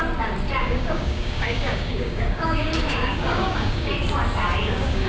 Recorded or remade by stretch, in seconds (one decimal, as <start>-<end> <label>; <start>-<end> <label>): 0.0-0.6 recorded; 0.6-3.9 remade; 3.9-4.6 recorded; 4.6-5.1 remade